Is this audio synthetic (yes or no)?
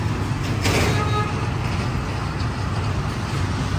no